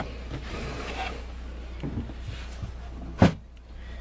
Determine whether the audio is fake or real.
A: real